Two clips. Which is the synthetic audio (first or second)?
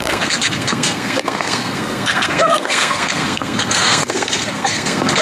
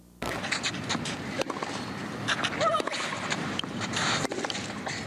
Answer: first